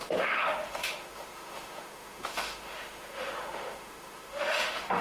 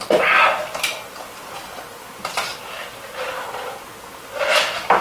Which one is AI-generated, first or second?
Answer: first